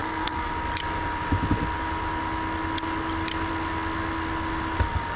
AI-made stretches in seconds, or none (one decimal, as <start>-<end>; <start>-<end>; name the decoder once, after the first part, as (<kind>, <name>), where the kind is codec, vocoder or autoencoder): 0.0-0.5 (codec, SNAC)